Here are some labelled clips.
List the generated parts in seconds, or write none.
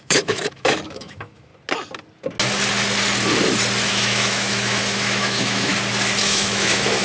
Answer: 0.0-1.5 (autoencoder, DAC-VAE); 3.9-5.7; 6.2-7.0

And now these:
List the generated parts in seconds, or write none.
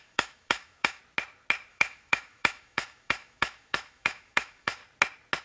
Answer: 0.0-1.0 (autoencoder, DAC-VAE); 1.7-4.8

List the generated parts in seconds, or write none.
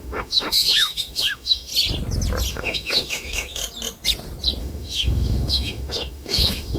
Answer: 0.0-1.7 (autoencoder, DAC-VAE); 2.5-3.6; 4.6-6.8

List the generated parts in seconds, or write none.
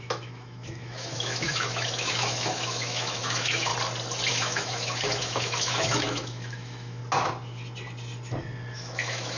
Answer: 0.0-3.7 (autoencoder, DAC-VAE); 4.3-7.0; 8.7-9.4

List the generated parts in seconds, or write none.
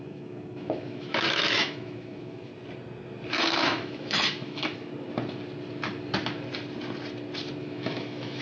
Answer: 0.0-2.5 (autoencoder, DAC-VAE); 3.3-4.9; 7.6-8.4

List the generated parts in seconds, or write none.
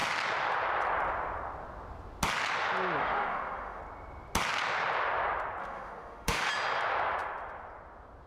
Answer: 3.0-3.8 (autoencoder, DAC-VAE); 5.6-6.5